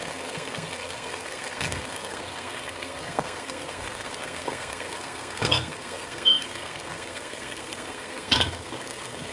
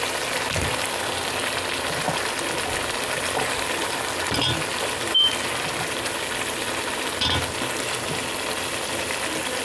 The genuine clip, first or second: second